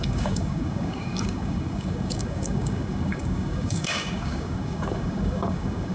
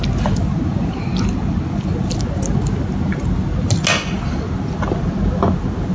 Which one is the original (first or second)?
second